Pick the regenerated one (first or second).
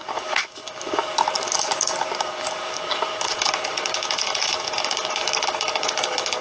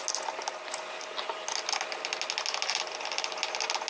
first